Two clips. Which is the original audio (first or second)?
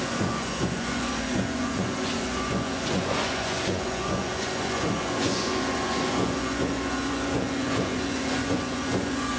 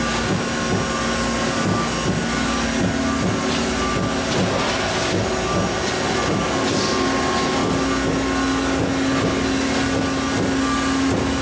second